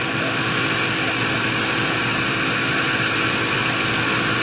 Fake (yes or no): no